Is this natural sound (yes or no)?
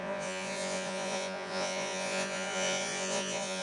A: no